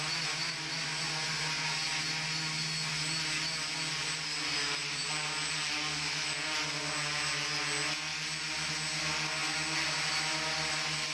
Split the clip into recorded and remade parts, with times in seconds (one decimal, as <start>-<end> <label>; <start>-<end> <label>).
0.0-11.1 recorded